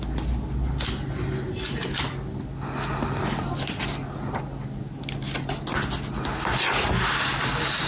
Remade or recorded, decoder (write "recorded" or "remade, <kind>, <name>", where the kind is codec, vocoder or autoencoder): recorded